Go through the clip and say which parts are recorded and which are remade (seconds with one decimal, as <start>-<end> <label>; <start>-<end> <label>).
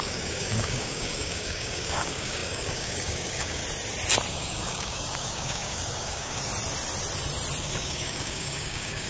0.0-3.6 remade; 3.6-4.3 recorded; 4.3-6.5 remade; 6.5-7.6 recorded; 7.6-9.1 remade